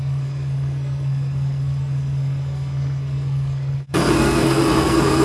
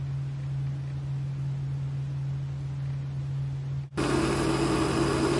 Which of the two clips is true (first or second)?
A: second